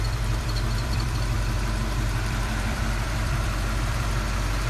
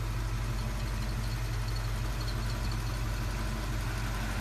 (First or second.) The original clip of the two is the second